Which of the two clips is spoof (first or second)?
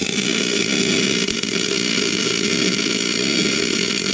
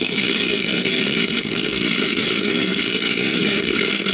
second